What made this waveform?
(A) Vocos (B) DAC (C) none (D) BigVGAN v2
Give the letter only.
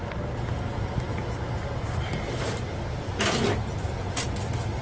C